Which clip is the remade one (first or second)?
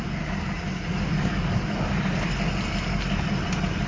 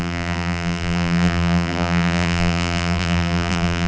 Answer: second